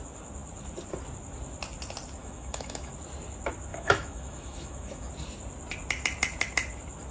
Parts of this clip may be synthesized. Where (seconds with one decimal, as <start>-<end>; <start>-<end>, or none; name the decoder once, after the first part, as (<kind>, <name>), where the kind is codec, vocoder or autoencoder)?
2.2-2.9 (autoencoder, DAC-VAE); 3.7-5.1